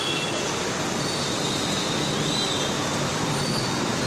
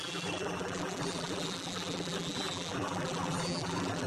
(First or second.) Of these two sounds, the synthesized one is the second